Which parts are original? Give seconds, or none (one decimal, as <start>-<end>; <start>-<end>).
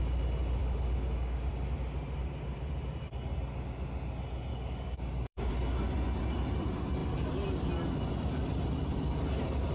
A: 0.0-0.6; 1.5-4.5; 5.5-9.7